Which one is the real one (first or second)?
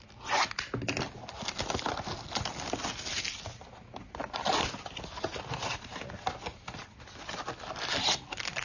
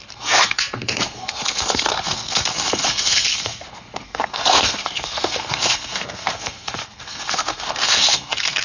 first